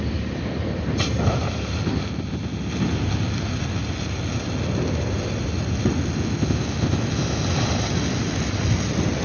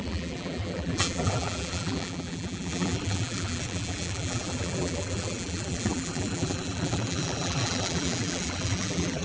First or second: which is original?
first